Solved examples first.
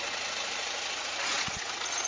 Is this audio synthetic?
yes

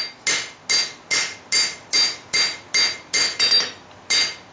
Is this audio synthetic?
no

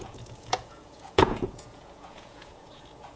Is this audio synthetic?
yes